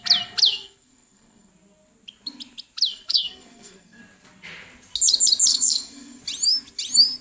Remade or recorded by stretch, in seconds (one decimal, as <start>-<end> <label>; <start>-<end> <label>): 0.0-0.5 recorded; 0.5-1.5 remade; 1.5-2.9 recorded; 2.9-4.0 remade; 4.0-5.5 recorded; 5.5-6.2 remade; 6.2-7.2 recorded